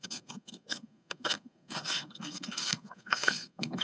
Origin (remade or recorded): remade